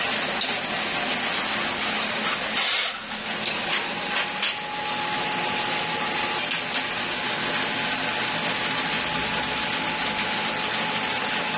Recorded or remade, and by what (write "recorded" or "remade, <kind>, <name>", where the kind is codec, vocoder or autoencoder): recorded